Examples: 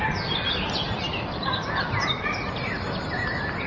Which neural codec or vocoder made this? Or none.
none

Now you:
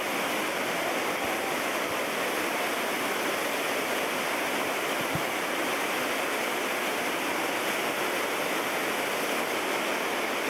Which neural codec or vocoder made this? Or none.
none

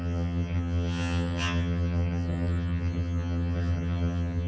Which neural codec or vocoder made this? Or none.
vocoder, HiFi-GAN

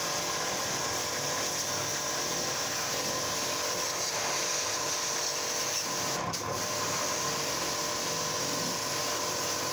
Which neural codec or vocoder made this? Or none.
none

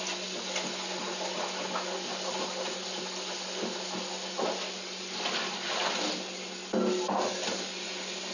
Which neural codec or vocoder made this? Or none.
none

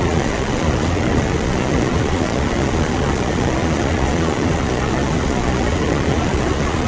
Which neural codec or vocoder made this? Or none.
vocoder, Vocos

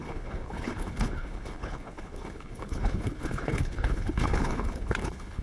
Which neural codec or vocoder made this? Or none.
codec, HILCodec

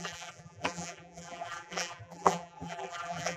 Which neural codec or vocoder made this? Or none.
vocoder, BigVGAN v2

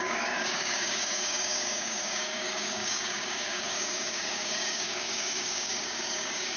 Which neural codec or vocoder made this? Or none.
codec, DAC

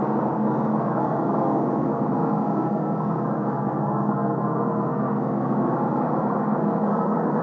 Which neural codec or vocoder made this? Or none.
codec, SNAC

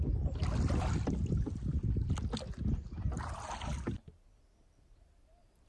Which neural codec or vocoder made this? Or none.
none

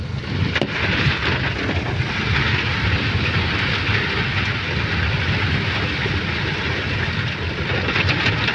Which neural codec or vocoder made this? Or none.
none